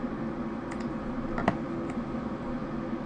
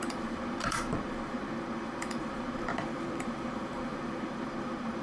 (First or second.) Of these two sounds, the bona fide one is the first